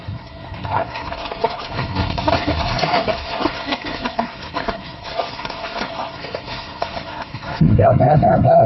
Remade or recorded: remade